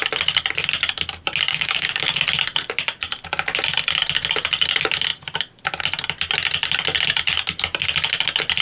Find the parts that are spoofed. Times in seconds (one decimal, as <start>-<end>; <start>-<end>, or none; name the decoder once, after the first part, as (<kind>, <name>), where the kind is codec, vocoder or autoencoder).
1.5-2.2 (codec, DAC)